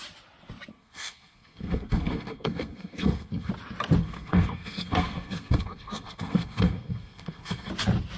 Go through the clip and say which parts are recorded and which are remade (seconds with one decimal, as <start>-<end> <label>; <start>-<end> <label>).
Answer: 0.0-0.7 recorded; 0.7-3.5 remade; 3.5-4.0 recorded; 4.0-7.7 remade; 7.7-8.2 recorded